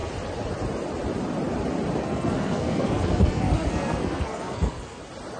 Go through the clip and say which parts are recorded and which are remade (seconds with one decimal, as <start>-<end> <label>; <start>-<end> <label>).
0.0-2.0 recorded; 2.0-5.0 remade; 5.0-5.4 recorded